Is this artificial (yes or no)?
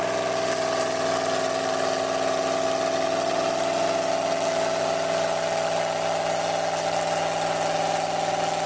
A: no